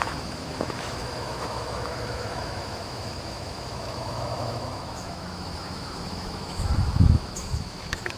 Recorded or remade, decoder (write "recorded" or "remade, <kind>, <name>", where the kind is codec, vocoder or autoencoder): remade, autoencoder, DAC-VAE